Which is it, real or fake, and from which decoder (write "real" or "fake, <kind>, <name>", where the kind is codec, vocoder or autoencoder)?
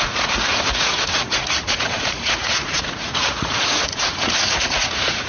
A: fake, vocoder, Vocos